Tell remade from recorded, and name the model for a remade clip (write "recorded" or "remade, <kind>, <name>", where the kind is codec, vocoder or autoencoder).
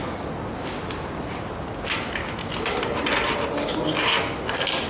recorded